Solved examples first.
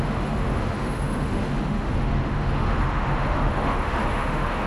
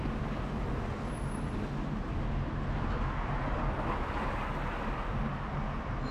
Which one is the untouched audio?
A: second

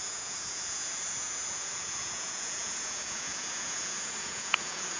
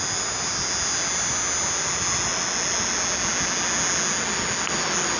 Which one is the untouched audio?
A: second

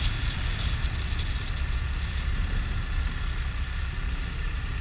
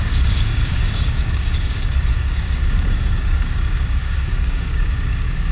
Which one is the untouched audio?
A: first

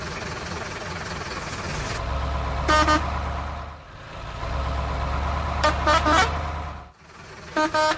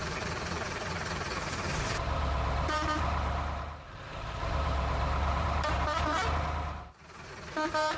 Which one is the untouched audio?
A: first